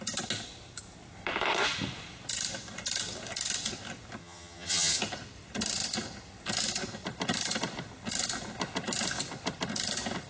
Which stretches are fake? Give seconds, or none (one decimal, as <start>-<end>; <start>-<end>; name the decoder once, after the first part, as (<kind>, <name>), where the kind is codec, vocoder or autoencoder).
4.2-5.0 (vocoder, HiFi-GAN)